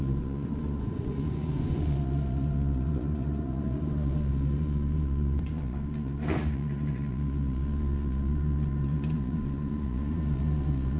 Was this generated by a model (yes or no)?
yes